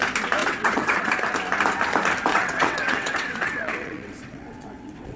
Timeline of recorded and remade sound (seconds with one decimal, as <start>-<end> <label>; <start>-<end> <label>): 0.0-0.4 recorded; 0.4-1.1 remade; 1.1-2.3 recorded; 2.3-5.2 remade